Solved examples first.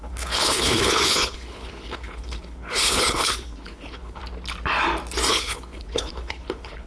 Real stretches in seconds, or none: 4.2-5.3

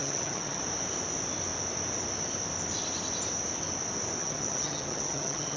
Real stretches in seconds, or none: 0.6-4.2

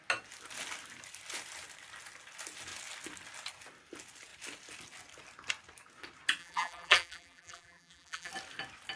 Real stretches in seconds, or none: 0.0-6.4; 8.3-9.0